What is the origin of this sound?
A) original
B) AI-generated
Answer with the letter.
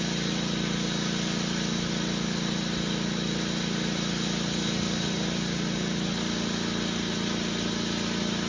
A